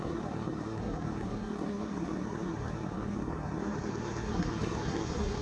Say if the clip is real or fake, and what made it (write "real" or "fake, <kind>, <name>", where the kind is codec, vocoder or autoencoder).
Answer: fake, codec, SNAC